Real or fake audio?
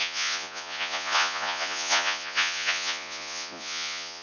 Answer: fake